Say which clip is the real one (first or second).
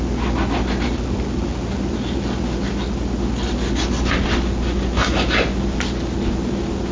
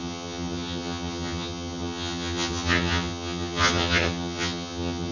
first